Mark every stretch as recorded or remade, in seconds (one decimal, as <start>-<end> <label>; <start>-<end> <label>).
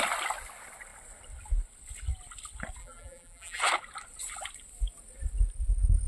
0.0-2.8 recorded; 2.8-3.6 remade; 3.6-6.1 recorded